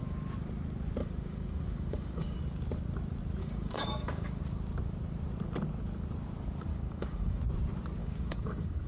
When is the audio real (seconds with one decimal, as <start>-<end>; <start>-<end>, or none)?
0.0-1.0; 2.4-3.4; 4.4-6.7; 7.4-8.0